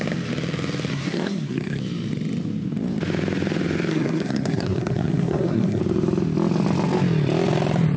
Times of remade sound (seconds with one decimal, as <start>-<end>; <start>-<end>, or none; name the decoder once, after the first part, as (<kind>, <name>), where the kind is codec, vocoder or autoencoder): 0.9-1.8 (codec, SNAC); 3.9-5.8